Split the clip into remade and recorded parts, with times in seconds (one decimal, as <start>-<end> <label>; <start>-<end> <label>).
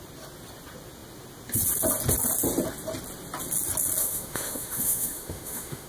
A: 0.0-4.0 recorded; 4.0-5.9 remade